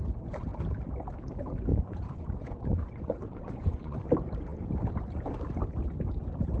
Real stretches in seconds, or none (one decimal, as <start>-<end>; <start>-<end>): 0.0-1.7; 4.0-6.6